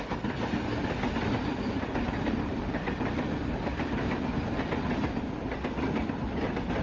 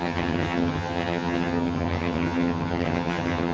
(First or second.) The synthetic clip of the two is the second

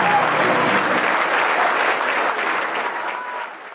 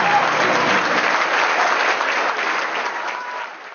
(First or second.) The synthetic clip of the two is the second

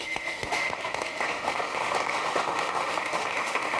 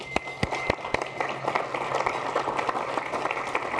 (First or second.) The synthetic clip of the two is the first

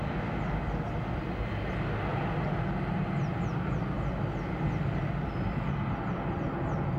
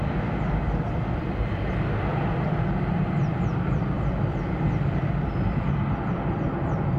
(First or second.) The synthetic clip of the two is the second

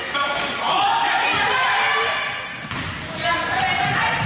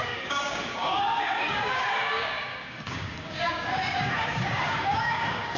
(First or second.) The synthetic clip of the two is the second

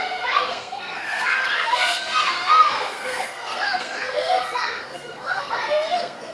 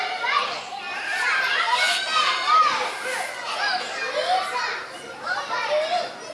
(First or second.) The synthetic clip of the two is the first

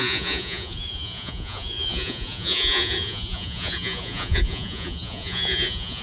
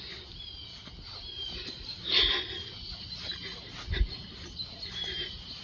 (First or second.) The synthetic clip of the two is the first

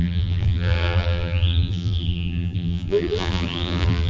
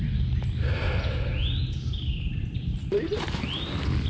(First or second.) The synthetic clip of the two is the first